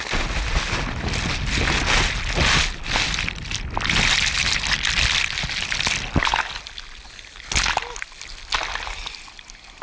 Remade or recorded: recorded